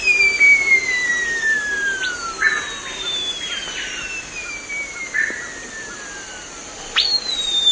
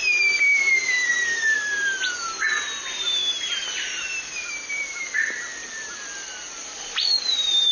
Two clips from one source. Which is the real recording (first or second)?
first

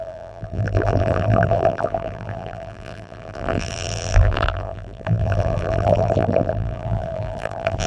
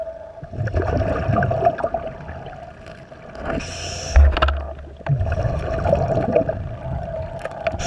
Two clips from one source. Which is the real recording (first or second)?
second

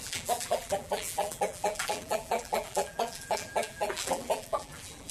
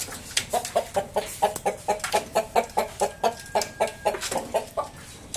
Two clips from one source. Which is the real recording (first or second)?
second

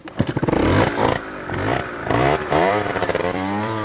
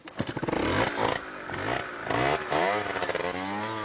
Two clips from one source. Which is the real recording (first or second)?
second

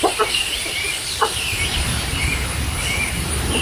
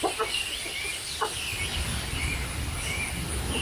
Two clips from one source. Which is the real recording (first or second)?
second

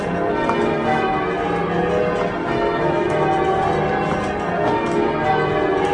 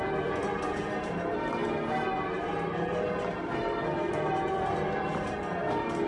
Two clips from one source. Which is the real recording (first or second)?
first